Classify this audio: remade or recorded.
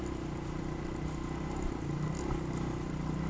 recorded